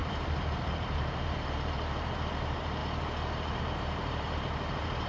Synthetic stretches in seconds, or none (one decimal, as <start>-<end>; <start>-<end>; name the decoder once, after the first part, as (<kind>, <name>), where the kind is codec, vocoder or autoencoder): 0.0-2.8 (vocoder, BigVGAN v2); 3.6-5.1

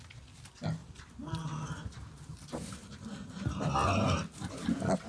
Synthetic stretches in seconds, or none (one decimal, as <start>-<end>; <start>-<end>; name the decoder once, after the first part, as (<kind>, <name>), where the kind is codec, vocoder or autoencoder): 0.8-3.9 (vocoder, BigVGAN v2)

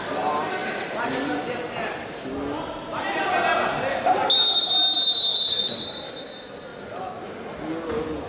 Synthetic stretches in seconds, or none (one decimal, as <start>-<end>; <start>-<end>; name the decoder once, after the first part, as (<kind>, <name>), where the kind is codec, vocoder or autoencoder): 0.6-2.3 (vocoder, BigVGAN v2); 5.3-6.1

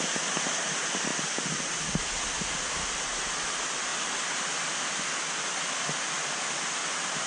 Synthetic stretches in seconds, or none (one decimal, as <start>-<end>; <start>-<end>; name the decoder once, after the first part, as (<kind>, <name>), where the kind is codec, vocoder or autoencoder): none

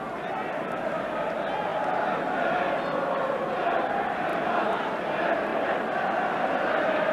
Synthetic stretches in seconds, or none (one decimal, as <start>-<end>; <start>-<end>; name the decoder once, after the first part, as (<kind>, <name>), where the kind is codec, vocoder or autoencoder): 4.3-5.1 (vocoder, BigVGAN v2)

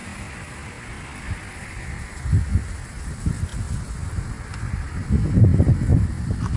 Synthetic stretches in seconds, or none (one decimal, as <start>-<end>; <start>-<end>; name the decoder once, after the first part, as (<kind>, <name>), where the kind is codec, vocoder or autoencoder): 2.5-3.3 (vocoder, BigVGAN v2); 5.9-6.6

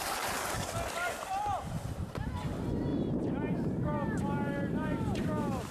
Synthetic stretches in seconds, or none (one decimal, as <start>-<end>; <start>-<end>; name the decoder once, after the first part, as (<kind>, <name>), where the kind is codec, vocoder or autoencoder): 2.9-5.7 (vocoder, BigVGAN v2)